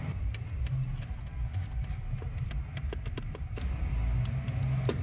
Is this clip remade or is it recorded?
recorded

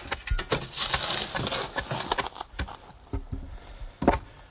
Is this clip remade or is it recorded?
recorded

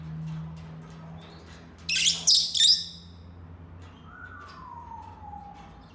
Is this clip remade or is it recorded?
recorded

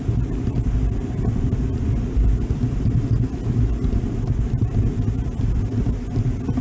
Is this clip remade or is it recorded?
recorded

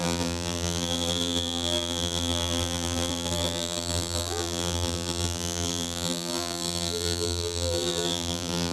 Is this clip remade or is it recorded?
remade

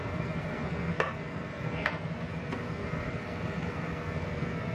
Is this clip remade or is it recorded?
remade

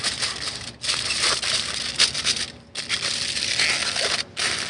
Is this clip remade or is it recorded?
recorded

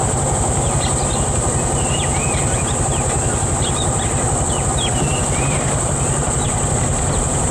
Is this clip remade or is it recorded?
recorded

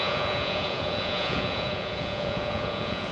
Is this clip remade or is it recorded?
remade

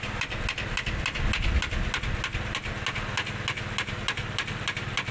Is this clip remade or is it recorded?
recorded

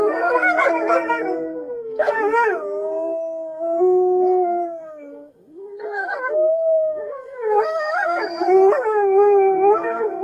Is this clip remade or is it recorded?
remade